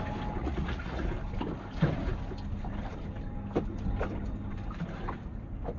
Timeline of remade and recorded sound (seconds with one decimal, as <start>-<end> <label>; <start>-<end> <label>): 0.0-0.4 recorded; 0.4-1.1 remade; 1.1-5.8 recorded